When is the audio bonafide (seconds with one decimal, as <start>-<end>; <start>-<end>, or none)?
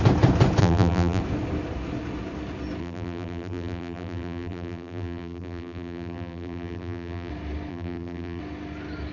0.0-0.6; 1.2-2.8; 7.3-7.7; 8.4-9.1